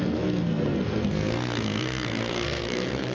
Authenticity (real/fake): fake